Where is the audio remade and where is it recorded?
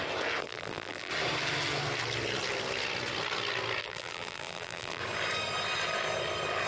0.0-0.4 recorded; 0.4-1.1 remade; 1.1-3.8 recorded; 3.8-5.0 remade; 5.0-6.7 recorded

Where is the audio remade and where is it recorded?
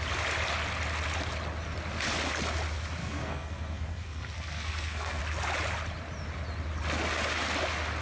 0.0-3.0 recorded; 3.0-5.2 remade; 5.2-8.0 recorded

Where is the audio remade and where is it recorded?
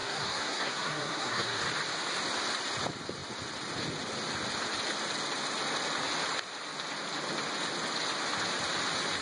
0.0-1.6 remade; 1.6-9.2 recorded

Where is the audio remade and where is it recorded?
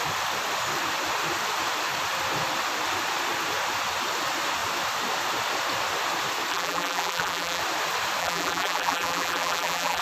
0.0-6.5 recorded; 6.5-7.6 remade; 7.6-8.2 recorded; 8.2-10.0 remade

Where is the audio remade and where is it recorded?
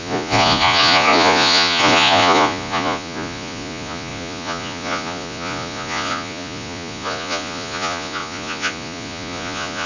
0.0-9.9 remade